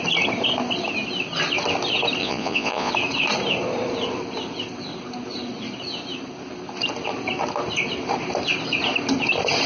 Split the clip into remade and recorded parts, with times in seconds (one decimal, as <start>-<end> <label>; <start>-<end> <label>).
0.0-2.2 recorded; 2.2-2.9 remade; 2.9-9.7 recorded

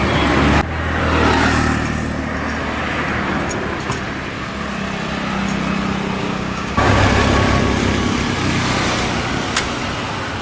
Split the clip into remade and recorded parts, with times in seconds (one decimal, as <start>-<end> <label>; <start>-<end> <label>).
0.0-6.2 recorded; 6.2-7.0 remade; 7.0-10.4 recorded

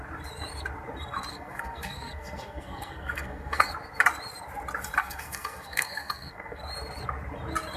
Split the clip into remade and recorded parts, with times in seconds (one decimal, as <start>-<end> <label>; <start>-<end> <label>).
0.0-1.3 recorded; 1.3-3.7 remade; 3.7-5.0 recorded; 5.0-6.6 remade; 6.6-7.8 recorded